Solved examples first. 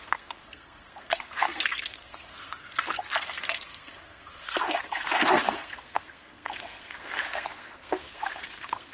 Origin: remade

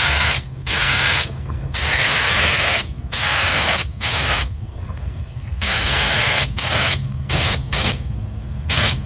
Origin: remade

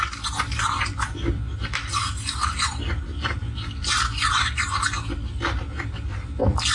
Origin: recorded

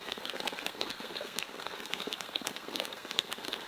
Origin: remade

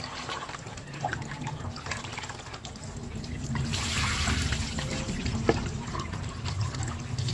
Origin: recorded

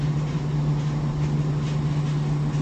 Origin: recorded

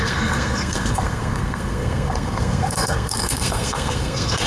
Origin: remade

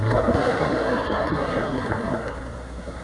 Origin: remade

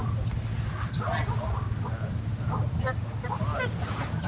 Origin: recorded